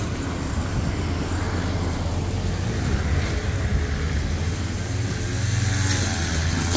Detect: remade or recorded recorded